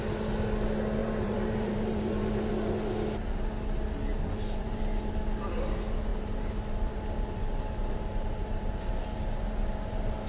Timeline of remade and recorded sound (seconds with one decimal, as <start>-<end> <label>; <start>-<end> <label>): 0.0-1.0 recorded; 1.0-2.5 remade; 2.5-4.1 recorded; 4.1-5.2 remade; 5.2-6.1 recorded; 6.1-8.9 remade; 8.9-10.3 recorded